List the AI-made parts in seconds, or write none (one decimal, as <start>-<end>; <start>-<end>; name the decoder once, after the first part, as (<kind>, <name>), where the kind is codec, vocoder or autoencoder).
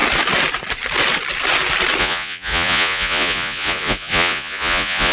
2.0-5.1 (vocoder, Vocos)